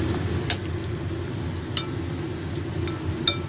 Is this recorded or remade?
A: recorded